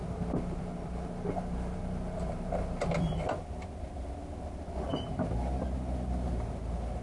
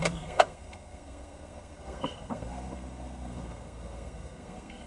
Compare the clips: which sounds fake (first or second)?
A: second